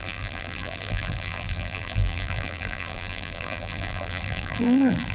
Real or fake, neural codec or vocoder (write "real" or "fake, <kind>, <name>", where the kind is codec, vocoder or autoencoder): fake, vocoder, BigVGAN v2